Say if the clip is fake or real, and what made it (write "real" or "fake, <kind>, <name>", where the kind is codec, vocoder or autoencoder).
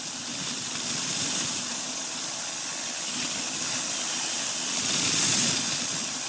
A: real